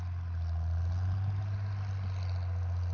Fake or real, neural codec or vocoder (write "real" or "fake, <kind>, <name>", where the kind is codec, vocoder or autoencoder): real